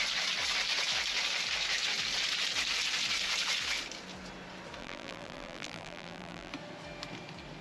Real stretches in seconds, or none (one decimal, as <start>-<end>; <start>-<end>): 0.0-4.8; 6.5-7.6